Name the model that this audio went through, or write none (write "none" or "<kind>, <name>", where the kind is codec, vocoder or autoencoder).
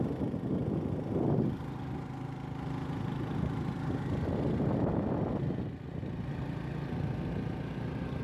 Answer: none